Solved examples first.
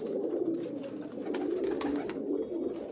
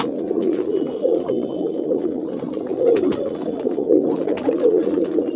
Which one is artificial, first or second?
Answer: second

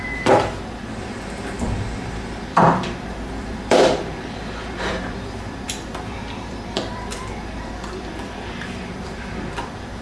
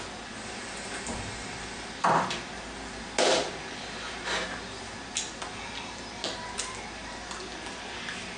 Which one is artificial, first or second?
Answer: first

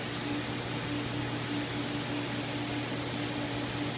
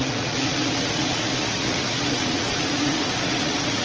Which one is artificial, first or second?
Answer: second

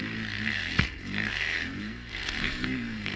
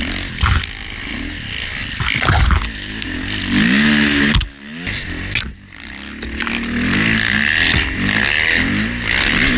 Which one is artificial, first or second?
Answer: first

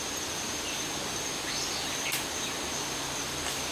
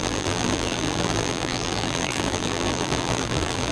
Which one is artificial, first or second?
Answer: second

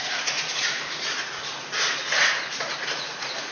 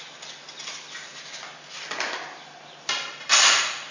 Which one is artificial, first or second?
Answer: first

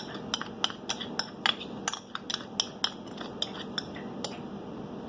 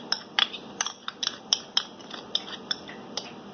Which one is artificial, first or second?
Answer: second